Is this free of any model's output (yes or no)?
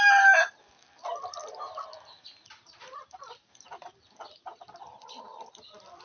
yes